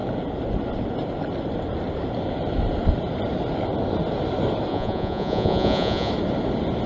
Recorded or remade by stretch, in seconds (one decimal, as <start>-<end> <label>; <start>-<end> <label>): 0.0-4.7 recorded; 4.7-6.1 remade; 6.1-6.9 recorded